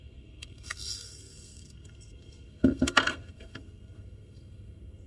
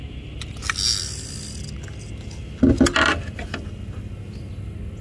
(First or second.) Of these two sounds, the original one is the second